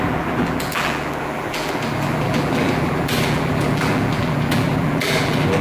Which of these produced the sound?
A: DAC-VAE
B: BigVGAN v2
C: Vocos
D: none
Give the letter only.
B